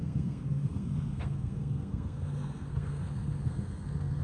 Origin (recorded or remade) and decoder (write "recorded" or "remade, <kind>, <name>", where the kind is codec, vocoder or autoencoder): remade, codec, SNAC